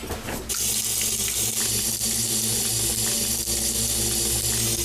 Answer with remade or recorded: recorded